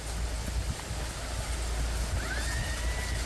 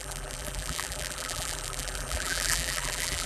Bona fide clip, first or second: first